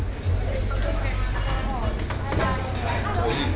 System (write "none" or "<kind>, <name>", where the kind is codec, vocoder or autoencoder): none